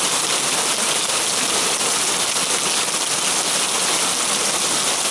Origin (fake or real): real